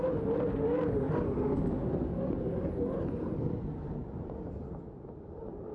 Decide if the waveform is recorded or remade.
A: recorded